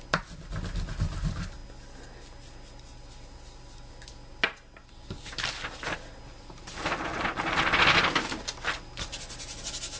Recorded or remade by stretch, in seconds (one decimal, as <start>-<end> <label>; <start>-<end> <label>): 0.0-10.0 recorded

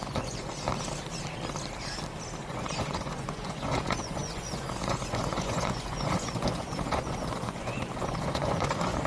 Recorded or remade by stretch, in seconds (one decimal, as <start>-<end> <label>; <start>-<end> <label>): 0.0-0.5 remade; 0.5-2.4 recorded; 2.4-9.1 remade

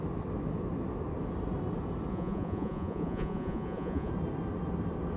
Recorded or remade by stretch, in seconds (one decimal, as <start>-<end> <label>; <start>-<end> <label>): 0.0-2.1 recorded; 2.1-4.1 remade; 4.1-5.2 recorded

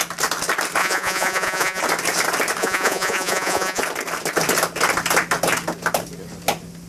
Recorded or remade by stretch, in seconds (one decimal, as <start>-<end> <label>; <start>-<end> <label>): 0.0-0.8 recorded; 0.8-1.8 remade; 1.8-2.6 recorded; 2.6-3.8 remade; 3.8-6.9 recorded

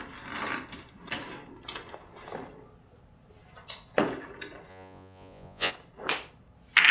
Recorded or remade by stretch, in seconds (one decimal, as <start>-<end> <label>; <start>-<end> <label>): 0.0-4.7 recorded; 4.7-5.7 remade; 5.7-6.9 recorded

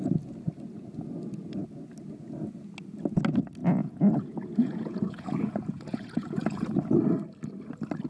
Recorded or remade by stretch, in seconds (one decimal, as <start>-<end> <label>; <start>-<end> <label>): 0.0-3.6 recorded; 3.6-6.7 remade; 6.7-8.1 recorded

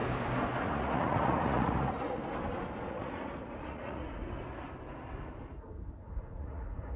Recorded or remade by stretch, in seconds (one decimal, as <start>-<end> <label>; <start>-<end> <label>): 0.0-0.6 recorded; 0.6-2.2 remade; 2.2-2.9 recorded; 2.9-4.2 remade; 4.2-6.2 recorded; 6.2-7.0 remade